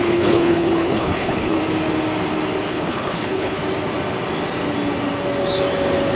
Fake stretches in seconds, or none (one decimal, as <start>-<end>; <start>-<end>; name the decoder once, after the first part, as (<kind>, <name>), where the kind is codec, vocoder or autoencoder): 0.0-1.6 (codec, HILCodec); 2.7-3.6